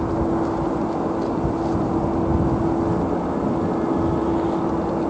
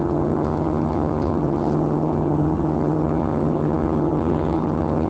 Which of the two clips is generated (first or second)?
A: second